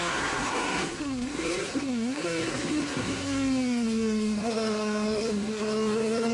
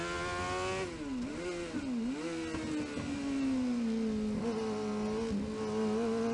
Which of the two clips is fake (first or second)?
first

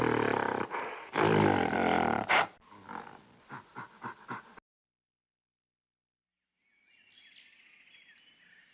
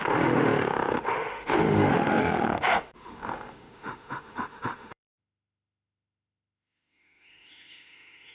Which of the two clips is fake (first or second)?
second